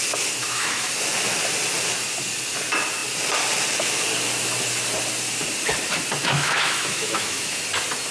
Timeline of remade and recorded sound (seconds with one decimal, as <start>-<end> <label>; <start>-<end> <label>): 0.0-0.4 recorded; 0.4-0.9 remade; 0.9-6.2 recorded; 6.2-7.6 remade; 7.6-8.1 recorded